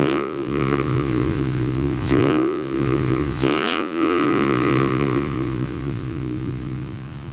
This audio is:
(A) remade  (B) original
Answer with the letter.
A